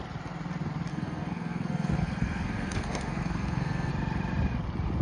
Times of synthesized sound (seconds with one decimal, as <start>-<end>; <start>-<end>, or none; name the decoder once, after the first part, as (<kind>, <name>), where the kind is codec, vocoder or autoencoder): 0.9-3.9 (codec, SNAC)